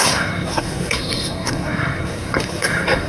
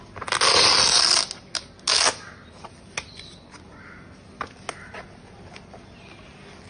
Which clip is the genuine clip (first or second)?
second